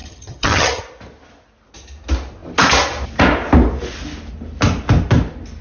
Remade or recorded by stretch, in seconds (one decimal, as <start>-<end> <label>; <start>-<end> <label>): 0.0-0.8 remade; 0.8-5.6 recorded